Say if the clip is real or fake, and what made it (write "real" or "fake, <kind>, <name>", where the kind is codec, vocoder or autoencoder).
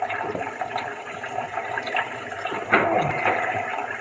fake, vocoder, BigVGAN v2